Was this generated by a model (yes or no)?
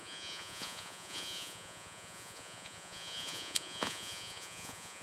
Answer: yes